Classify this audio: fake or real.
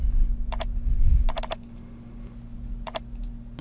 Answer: real